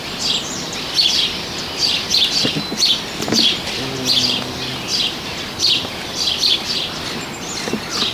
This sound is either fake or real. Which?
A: real